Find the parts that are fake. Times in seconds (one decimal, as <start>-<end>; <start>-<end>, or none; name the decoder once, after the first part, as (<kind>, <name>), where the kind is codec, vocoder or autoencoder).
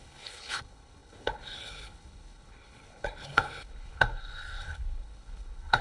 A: 0.0-5.8 (codec, HILCodec)